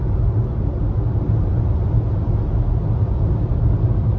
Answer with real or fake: real